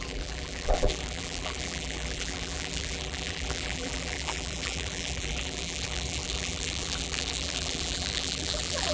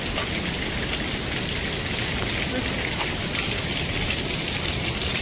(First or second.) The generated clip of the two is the first